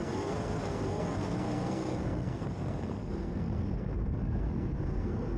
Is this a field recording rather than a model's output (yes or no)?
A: no